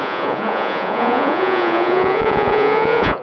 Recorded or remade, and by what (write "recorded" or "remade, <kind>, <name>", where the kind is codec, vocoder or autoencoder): remade, vocoder, Vocos